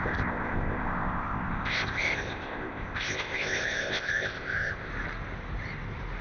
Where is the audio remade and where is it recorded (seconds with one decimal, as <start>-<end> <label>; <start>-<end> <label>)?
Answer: 0.0-4.9 remade; 4.9-6.2 recorded